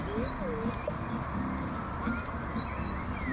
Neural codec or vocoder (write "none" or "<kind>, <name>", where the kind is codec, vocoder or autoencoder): none